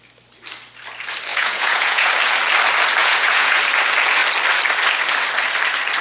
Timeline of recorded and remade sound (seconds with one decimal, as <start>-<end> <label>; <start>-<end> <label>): 0.0-1.3 recorded; 1.3-2.1 remade; 2.1-3.0 recorded; 3.0-3.6 remade; 3.6-6.0 recorded